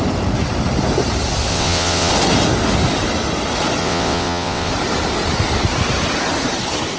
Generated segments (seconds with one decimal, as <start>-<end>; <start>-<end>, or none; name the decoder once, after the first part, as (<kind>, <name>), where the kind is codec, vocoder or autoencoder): 1.5-2.1 (vocoder, WaveNeXt); 3.8-4.7